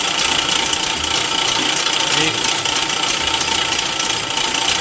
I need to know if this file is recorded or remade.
recorded